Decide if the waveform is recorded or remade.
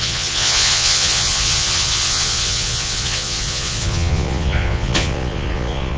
remade